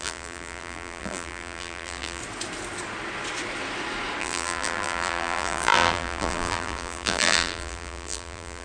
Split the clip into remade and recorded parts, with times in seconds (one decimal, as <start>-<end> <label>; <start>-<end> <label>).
0.0-2.2 remade; 2.2-4.2 recorded; 4.2-8.6 remade